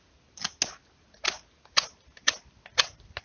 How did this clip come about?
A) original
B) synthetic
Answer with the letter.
A